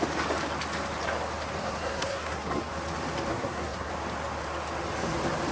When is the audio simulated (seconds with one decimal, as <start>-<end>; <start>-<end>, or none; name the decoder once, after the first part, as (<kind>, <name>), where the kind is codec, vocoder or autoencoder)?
1.6-2.7 (codec, SNAC); 3.3-3.9